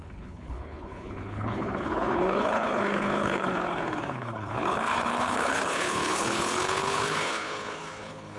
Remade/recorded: remade